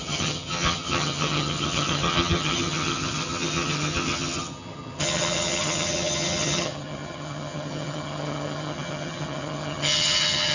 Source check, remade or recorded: remade